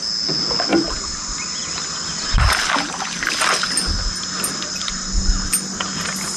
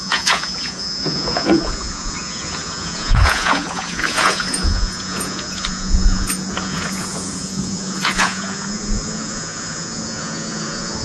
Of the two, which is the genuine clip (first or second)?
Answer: first